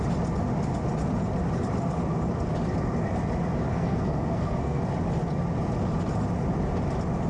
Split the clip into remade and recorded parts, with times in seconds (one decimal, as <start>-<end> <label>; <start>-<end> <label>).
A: 0.0-3.7 recorded; 3.7-4.8 remade; 4.8-7.3 recorded